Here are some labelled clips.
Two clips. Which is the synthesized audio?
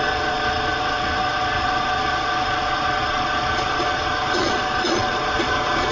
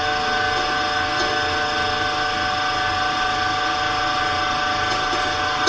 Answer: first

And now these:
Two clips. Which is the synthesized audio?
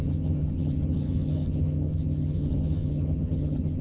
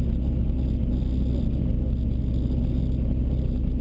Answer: first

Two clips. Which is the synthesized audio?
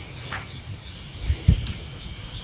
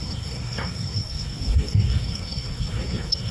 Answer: second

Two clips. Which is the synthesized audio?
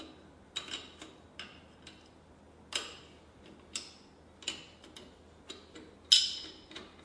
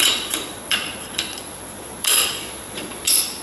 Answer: second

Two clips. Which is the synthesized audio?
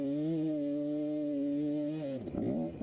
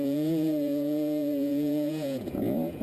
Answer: second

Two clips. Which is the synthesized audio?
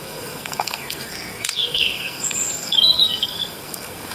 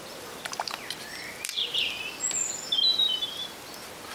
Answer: first